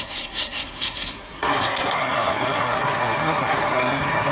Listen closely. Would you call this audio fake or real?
fake